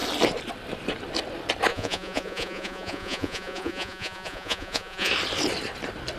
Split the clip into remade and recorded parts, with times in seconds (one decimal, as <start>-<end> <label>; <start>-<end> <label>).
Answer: 0.0-1.7 recorded; 1.7-5.1 remade; 5.1-6.2 recorded